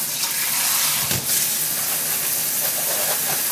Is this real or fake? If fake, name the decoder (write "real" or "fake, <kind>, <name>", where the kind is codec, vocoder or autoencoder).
real